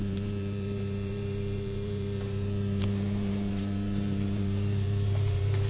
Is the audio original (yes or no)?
no